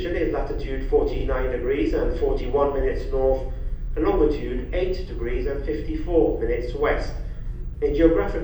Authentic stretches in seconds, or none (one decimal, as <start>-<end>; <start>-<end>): 0.0-2.9; 4.0-8.4